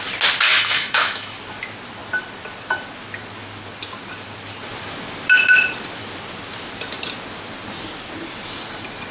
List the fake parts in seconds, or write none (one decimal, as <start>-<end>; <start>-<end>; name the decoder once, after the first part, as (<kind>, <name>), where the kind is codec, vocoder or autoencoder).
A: 0.5-1.4 (autoencoder, DAC-VAE)